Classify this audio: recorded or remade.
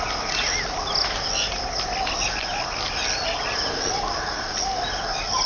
recorded